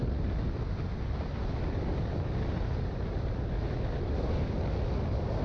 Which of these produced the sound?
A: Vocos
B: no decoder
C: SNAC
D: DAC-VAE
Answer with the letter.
B